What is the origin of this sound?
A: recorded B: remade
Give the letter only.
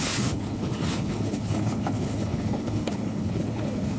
B